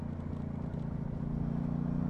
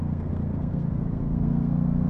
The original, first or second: first